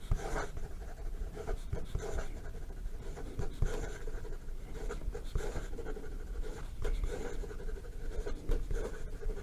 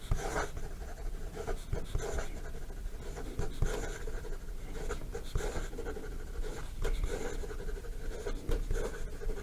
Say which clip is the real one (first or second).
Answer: second